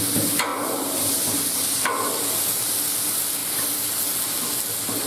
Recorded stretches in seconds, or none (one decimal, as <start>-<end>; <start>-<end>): 0.0-0.5; 2.1-3.4; 4.0-5.1